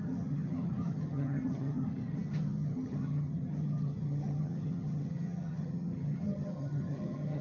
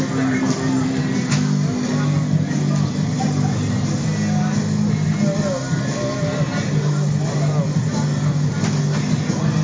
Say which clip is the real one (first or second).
second